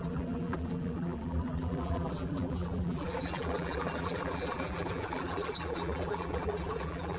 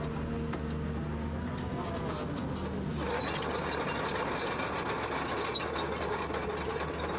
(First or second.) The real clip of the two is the second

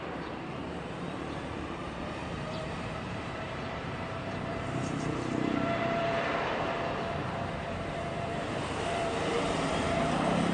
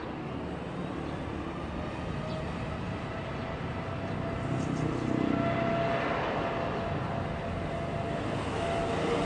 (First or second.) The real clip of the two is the second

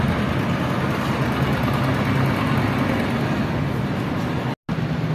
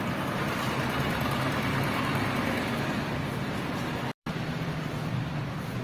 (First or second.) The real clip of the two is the first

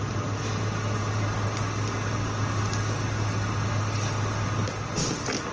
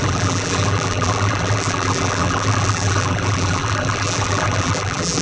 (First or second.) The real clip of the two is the first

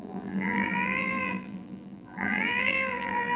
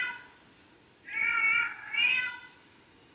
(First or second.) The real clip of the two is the second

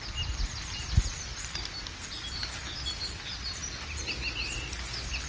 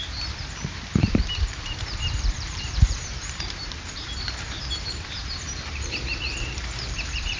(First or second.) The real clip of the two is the first